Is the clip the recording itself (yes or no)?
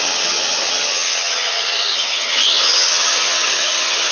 no